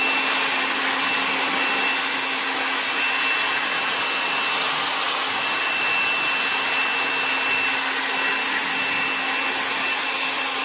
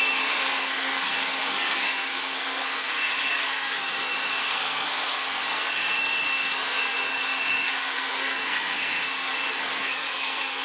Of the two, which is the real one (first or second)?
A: first